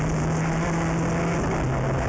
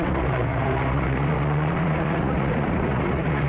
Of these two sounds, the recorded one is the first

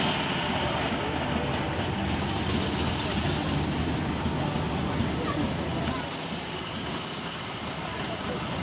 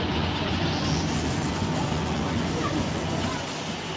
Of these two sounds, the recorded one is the first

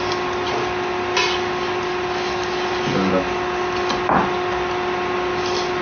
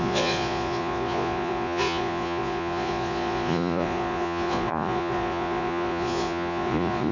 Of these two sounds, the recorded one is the first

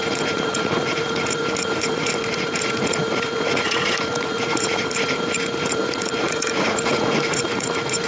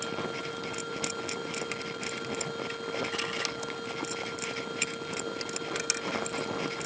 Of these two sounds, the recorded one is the second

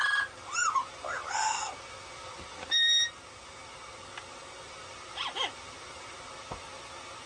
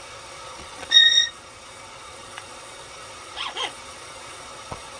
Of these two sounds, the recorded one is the first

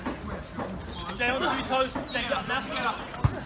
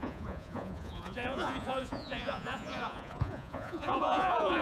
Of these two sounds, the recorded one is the first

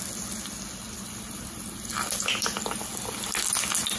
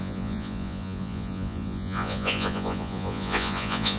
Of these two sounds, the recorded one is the first